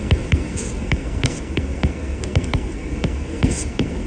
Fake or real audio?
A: fake